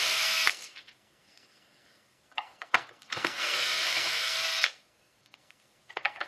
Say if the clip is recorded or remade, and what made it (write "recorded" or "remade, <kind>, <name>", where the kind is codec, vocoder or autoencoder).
remade, codec, SNAC